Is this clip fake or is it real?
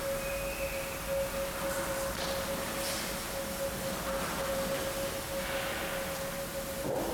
real